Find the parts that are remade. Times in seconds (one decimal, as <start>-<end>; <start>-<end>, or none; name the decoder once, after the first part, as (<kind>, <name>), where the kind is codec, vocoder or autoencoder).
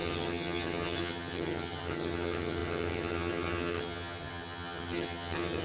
0.0-5.6 (vocoder, HiFi-GAN)